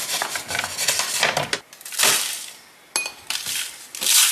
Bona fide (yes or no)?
yes